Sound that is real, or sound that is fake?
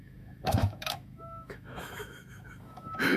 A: fake